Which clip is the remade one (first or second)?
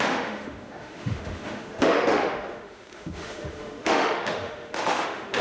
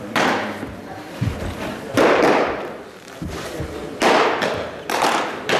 first